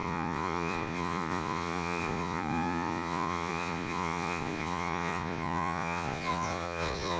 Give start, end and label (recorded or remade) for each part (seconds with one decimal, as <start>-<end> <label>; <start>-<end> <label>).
0.0-7.2 remade